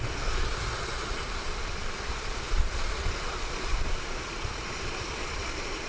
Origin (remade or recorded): remade